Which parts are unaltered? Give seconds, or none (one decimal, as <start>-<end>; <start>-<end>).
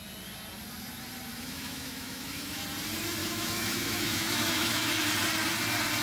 0.0-1.3; 2.6-3.2; 4.9-6.0